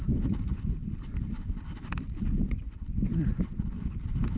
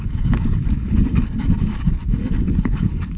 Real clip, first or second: first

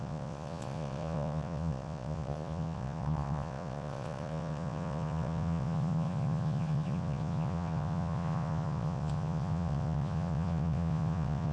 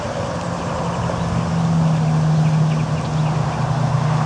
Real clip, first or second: second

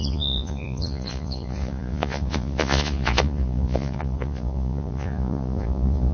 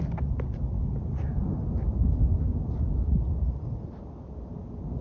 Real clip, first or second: second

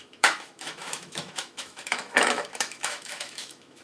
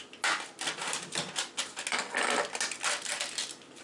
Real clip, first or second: second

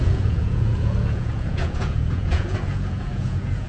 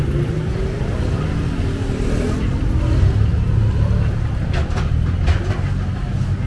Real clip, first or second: second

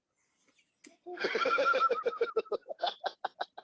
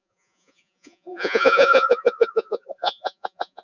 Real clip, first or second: first